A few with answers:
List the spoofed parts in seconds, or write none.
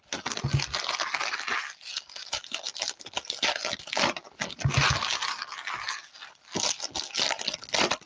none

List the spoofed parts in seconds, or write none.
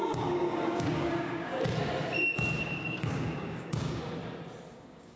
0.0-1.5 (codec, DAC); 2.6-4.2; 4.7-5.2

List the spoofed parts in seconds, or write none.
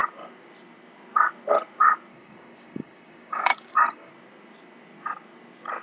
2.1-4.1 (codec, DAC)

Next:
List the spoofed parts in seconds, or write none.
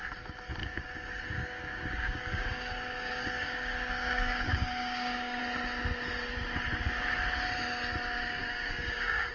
0.6-5.4 (codec, DAC); 8.4-9.3